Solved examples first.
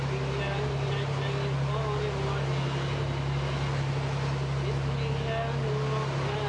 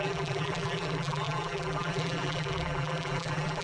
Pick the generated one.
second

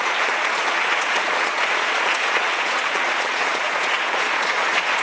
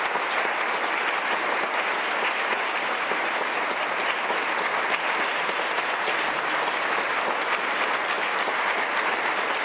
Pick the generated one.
first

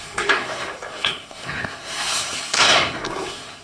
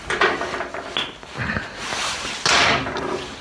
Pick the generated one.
first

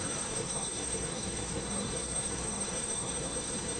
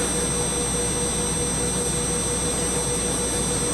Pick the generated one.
first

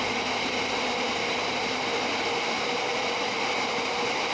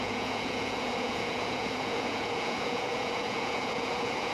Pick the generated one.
second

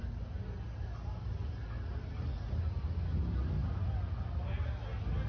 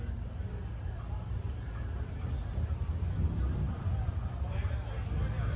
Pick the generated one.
second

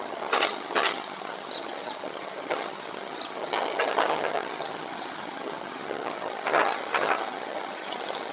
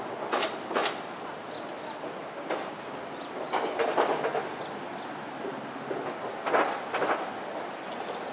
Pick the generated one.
first